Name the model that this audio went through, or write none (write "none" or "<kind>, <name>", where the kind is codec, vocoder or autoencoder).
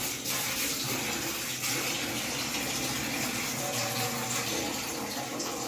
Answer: none